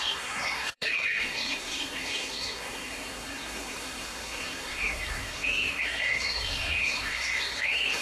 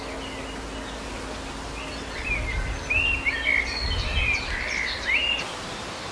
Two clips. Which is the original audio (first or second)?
second